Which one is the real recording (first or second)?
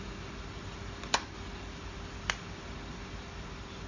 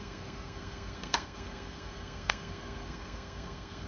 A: first